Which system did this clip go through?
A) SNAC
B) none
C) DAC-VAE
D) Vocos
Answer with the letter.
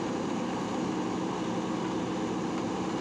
B